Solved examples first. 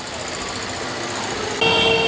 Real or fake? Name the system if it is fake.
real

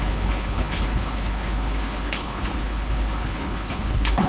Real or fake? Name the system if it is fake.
fake, codec, HILCodec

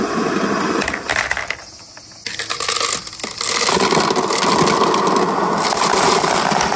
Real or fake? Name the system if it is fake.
real